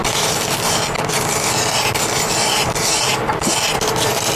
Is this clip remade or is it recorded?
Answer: recorded